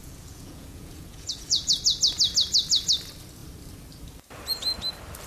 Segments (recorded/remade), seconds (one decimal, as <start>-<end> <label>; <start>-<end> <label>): 0.0-1.7 remade; 1.7-5.3 recorded